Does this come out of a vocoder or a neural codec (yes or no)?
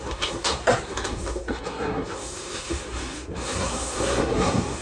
yes